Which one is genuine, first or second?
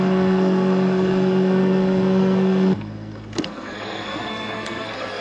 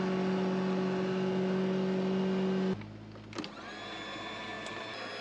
second